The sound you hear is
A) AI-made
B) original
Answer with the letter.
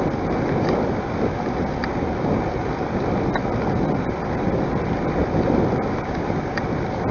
B